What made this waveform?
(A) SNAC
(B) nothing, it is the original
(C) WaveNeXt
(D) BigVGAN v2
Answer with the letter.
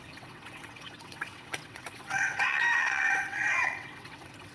C